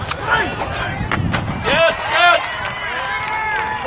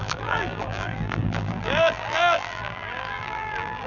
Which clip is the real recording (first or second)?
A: first